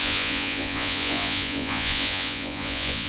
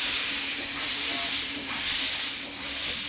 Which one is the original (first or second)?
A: second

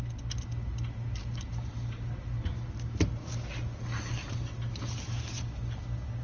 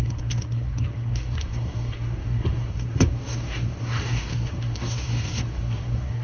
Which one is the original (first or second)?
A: first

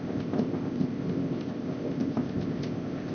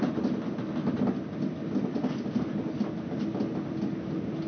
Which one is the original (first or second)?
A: second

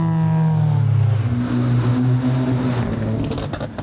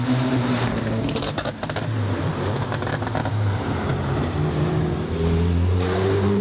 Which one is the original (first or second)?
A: first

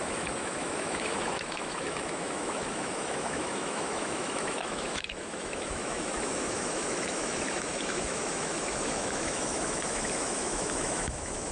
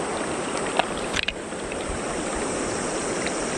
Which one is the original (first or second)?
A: second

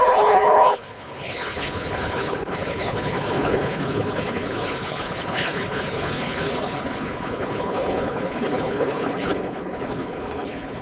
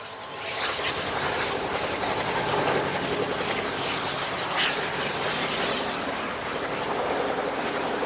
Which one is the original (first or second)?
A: second